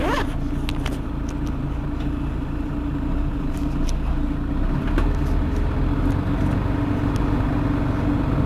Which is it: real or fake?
real